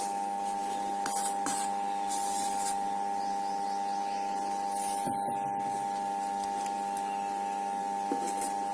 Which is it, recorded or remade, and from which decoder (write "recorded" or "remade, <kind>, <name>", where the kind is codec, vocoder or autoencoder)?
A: recorded